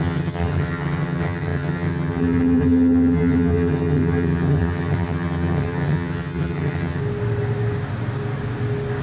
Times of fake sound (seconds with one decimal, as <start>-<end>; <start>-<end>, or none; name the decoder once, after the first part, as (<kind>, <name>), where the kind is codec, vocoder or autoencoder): 0.0-7.0 (vocoder, HiFi-GAN)